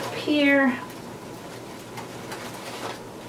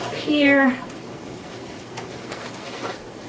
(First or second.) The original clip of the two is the first